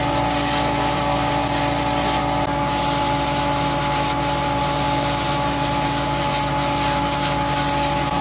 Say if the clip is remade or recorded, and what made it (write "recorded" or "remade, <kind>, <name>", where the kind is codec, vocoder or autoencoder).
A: recorded